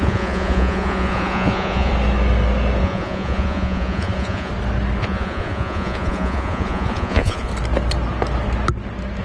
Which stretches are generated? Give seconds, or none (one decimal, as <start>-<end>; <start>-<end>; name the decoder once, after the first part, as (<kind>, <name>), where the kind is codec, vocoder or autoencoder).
0.0-1.9 (vocoder, Vocos); 2.8-4.5; 5.0-7.5